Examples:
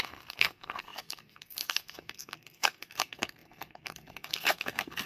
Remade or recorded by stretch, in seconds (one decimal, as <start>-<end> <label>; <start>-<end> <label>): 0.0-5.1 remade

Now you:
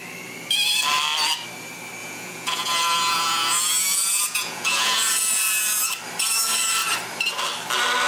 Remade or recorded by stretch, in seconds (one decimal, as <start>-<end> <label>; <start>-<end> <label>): 0.0-2.0 recorded; 2.0-5.9 remade; 5.9-8.1 recorded

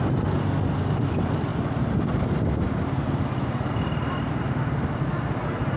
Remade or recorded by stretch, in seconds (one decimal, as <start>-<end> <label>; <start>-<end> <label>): 0.0-1.5 recorded; 1.5-4.3 remade; 4.3-5.8 recorded